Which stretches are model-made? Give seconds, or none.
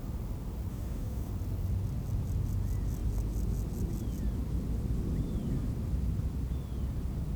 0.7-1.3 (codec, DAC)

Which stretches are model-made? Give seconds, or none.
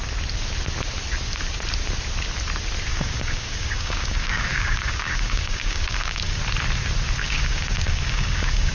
2.9-6.4 (codec, DAC); 7.2-8.7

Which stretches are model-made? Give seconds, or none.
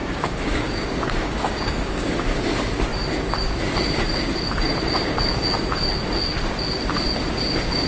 0.0-2.5 (codec, DAC)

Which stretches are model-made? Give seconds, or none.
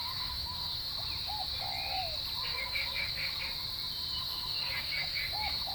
0.0-0.9 (codec, DAC); 2.5-3.4; 4.2-5.7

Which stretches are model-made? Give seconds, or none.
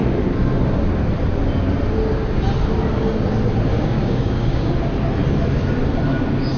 3.7-4.7 (codec, DAC)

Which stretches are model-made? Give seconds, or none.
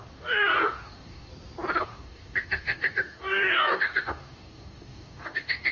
0.0-1.3 (codec, DAC); 1.8-5.7